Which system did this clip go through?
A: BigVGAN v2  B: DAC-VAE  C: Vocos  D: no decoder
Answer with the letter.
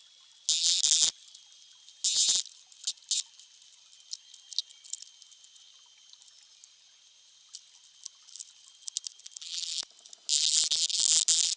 D